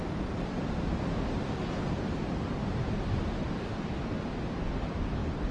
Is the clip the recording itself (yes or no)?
yes